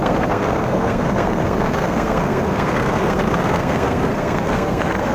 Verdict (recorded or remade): remade